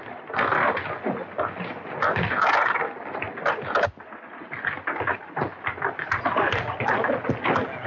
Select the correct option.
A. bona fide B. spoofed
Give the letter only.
A